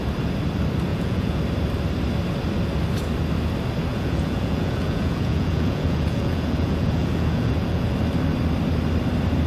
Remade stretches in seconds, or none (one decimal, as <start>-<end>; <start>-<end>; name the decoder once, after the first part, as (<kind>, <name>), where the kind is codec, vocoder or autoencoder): 0.9-1.4 (vocoder, Vocos); 3.9-7.9

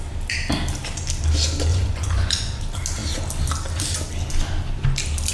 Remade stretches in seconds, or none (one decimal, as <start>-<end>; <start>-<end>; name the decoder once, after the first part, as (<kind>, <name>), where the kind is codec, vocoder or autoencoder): 1.7-2.6 (vocoder, Vocos)

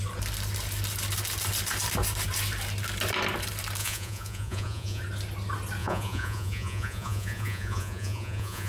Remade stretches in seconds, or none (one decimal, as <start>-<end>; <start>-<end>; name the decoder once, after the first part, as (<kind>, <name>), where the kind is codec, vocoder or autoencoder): 3.8-5.0 (vocoder, Vocos); 5.8-8.7

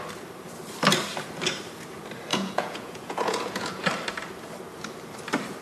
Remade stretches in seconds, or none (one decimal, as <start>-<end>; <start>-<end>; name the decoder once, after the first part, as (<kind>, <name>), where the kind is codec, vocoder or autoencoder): 2.3-3.8 (vocoder, Vocos)

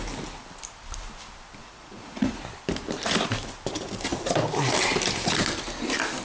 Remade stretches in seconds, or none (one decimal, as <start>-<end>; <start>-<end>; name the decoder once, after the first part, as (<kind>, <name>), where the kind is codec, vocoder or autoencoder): 1.6-2.4 (vocoder, Vocos)

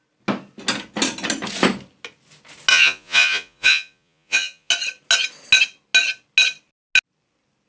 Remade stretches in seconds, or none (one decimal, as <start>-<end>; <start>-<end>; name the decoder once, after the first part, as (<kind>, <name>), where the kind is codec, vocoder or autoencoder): 2.7-4.7 (vocoder, Vocos)

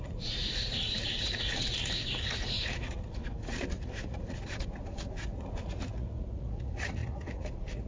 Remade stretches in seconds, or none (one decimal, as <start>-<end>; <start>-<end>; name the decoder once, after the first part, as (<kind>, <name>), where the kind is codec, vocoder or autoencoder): 0.0-7.9 (vocoder, Vocos)